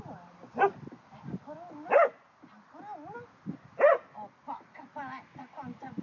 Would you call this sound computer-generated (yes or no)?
no